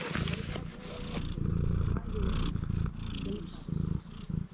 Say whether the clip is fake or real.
real